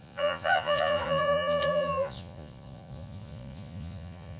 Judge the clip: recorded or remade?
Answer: remade